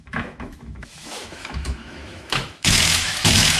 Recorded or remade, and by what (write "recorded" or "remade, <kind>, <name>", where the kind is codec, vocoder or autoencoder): remade, autoencoder, DAC-VAE